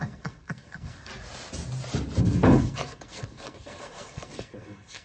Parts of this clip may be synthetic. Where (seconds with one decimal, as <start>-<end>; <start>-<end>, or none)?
0.0-1.1; 2.2-5.0